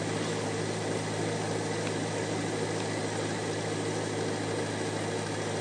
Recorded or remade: recorded